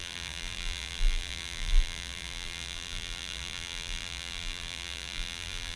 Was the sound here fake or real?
fake